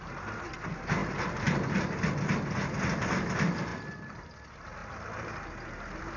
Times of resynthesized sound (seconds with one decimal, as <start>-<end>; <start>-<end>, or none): 1.0-2.1; 4.8-6.2